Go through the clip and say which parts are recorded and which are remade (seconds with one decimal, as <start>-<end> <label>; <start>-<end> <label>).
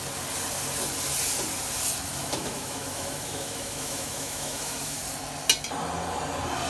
0.0-2.2 recorded; 2.2-5.0 remade; 5.0-6.7 recorded